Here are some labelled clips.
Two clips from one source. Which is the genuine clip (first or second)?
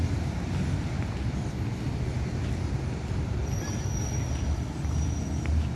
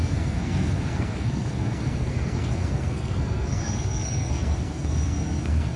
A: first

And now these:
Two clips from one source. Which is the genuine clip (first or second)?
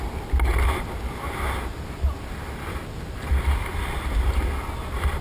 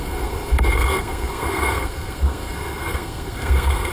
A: first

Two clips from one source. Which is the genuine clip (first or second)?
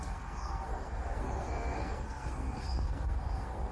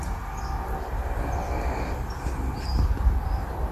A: second